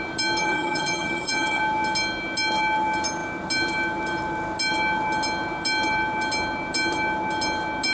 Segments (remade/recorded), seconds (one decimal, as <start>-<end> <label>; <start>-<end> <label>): 0.0-0.4 recorded; 0.4-1.6 remade; 1.6-7.9 recorded